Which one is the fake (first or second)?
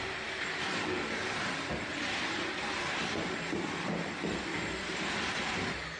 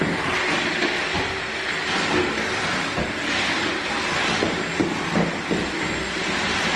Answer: first